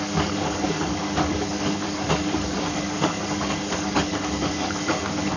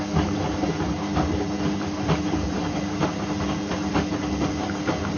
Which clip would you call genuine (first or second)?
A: second